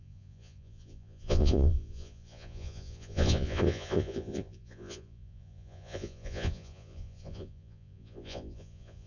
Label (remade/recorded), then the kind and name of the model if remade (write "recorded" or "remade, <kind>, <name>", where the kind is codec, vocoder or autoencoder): remade, vocoder, Vocos